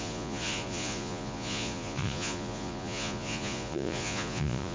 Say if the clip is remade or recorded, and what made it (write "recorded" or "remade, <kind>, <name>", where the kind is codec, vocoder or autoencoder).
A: remade, vocoder, Vocos